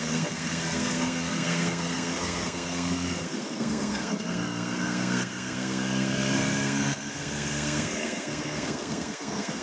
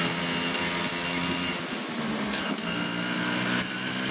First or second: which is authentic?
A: second